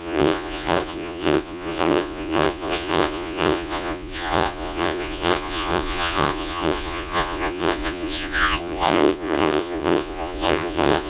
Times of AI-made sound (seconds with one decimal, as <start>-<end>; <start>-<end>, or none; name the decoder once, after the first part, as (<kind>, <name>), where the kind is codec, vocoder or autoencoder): 0.0-11.1 (vocoder, Vocos)